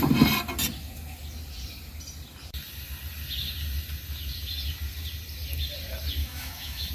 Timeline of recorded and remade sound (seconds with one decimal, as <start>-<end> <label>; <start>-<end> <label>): 0.0-6.2 recorded; 6.2-6.9 remade